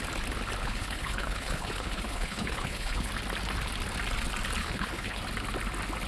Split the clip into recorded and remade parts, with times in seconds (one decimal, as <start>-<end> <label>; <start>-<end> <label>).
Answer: 0.0-0.6 recorded; 0.6-3.1 remade; 3.1-4.6 recorded; 4.6-5.2 remade; 5.2-6.1 recorded